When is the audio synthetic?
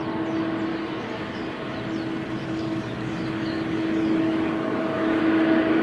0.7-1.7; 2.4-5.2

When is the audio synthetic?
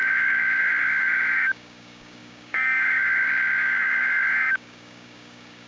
0.0-5.7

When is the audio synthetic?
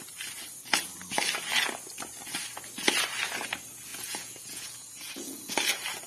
3.9-5.5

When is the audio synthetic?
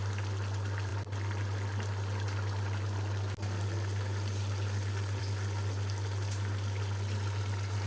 none